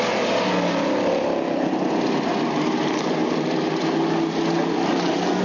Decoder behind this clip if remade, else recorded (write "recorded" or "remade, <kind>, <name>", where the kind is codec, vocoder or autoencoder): recorded